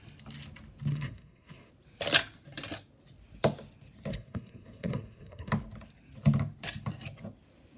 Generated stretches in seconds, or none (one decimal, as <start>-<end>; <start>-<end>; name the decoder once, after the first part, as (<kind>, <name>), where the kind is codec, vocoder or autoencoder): 0.9-1.7 (codec, SNAC); 4.1-5.5